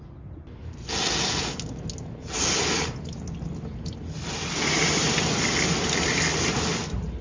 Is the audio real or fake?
real